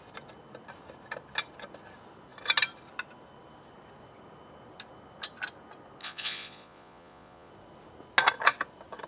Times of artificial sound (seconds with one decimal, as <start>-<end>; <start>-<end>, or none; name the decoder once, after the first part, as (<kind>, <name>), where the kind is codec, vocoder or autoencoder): 6.0-7.5 (vocoder, Vocos)